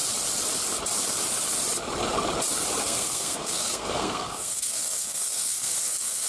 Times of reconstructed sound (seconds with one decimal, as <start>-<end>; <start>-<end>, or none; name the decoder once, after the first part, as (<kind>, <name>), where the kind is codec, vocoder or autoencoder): 2.8-6.3 (codec, SNAC)